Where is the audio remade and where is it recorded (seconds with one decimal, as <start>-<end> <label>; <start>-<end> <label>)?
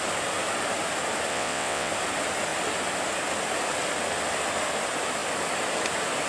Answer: 0.0-1.3 recorded; 1.3-1.9 remade; 1.9-6.3 recorded